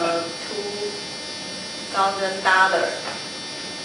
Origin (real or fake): real